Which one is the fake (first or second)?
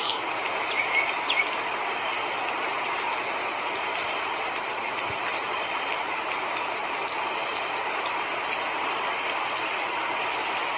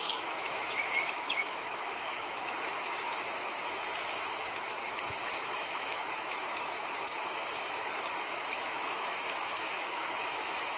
second